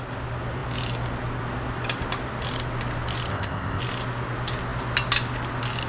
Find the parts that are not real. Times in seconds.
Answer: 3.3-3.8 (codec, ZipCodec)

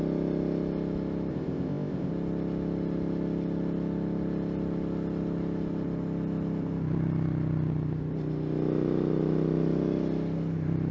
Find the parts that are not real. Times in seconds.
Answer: 1.3-2.1 (codec, ZipCodec)